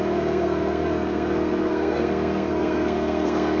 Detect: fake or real fake